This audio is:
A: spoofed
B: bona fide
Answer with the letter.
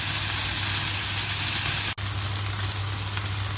B